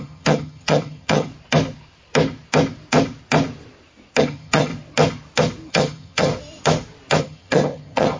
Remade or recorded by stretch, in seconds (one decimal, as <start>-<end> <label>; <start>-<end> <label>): 0.0-1.3 remade; 1.3-4.2 recorded; 4.2-4.7 remade; 4.7-5.7 recorded; 5.7-6.3 remade; 6.3-7.2 recorded; 7.2-8.2 remade